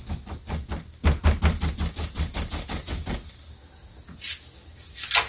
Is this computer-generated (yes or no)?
no